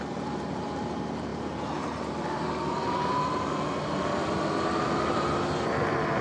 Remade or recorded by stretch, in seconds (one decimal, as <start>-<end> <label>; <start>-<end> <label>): 0.0-6.2 recorded